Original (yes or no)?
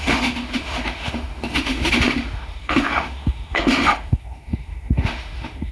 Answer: no